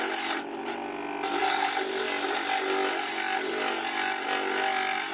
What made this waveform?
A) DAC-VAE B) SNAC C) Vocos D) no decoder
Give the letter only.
D